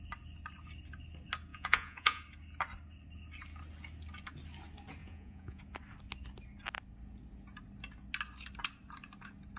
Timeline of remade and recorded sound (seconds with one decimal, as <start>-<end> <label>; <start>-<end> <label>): 0.0-1.5 recorded; 1.5-2.2 remade; 2.2-5.0 recorded; 5.0-5.6 remade; 5.6-9.6 recorded